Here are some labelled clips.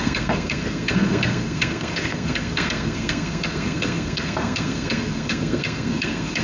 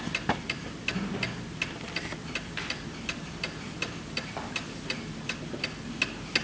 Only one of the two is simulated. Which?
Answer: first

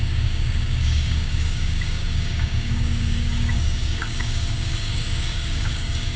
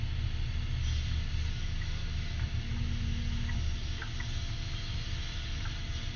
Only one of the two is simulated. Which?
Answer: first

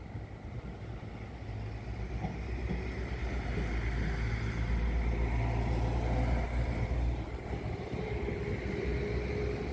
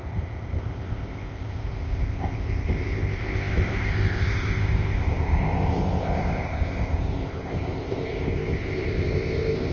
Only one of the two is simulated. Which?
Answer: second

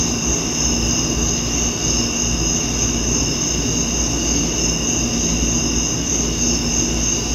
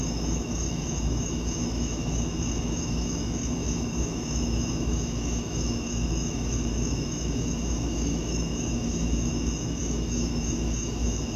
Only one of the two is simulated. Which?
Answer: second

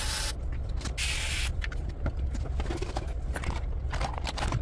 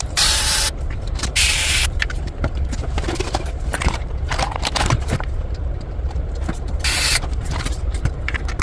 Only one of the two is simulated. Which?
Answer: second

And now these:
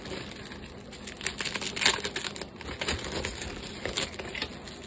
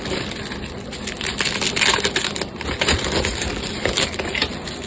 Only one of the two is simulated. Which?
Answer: second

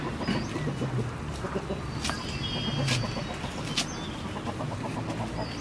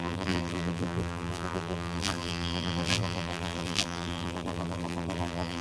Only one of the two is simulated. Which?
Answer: second